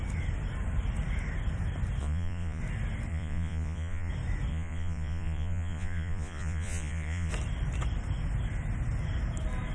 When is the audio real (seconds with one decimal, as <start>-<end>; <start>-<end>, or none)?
0.0-2.0; 2.6-3.1; 4.1-4.5; 7.3-9.7